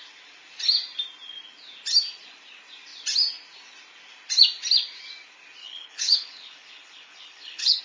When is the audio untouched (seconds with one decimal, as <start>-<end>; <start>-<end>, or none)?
0.0-5.6